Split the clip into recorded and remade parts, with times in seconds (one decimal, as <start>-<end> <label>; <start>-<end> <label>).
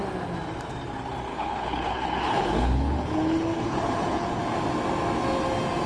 0.0-1.3 recorded; 1.3-4.4 remade; 4.4-5.9 recorded